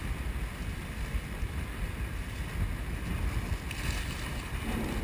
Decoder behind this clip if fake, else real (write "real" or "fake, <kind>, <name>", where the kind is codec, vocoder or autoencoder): real